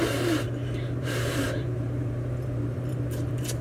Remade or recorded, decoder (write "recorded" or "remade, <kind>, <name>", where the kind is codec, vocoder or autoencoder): remade, vocoder, BigVGAN v2